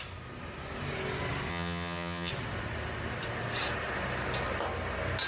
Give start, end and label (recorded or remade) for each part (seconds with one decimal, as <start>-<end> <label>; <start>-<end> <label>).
0.0-1.5 recorded; 1.5-2.3 remade; 2.3-5.3 recorded